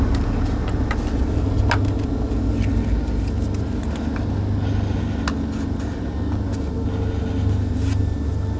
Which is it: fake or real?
real